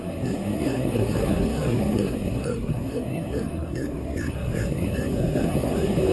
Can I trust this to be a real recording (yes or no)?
no